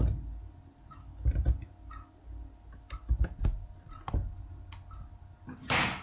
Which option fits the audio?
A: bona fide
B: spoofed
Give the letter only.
A